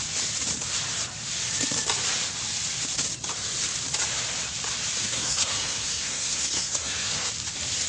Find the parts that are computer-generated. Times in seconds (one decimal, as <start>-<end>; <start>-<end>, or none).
5.0-7.3